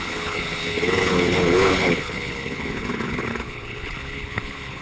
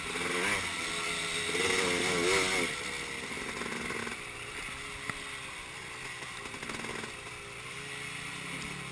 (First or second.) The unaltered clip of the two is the second